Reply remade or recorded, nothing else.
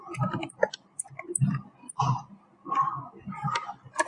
recorded